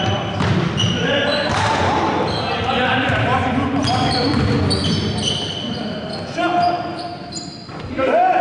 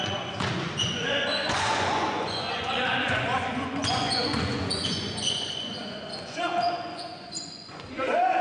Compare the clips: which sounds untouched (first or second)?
first